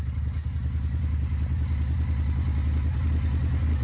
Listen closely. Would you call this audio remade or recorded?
recorded